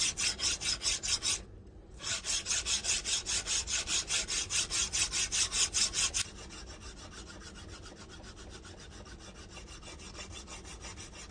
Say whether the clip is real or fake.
real